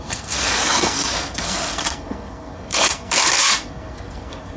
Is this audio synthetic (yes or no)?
yes